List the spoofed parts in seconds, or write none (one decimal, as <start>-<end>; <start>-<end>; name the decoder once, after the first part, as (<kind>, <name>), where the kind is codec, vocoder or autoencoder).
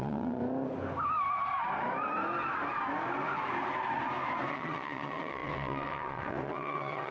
0.0-0.4 (vocoder, WaveNeXt); 4.5-7.1